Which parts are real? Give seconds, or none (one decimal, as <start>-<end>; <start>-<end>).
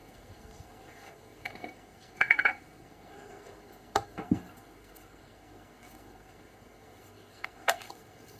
none